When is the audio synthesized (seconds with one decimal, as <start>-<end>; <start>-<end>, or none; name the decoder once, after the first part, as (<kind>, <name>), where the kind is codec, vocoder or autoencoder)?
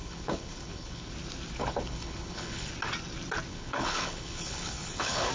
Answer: 0.0-1.1 (codec, HILCodec); 1.6-2.7; 3.5-5.3